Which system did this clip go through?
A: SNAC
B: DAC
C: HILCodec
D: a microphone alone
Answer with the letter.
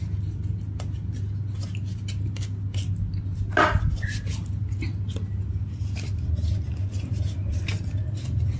D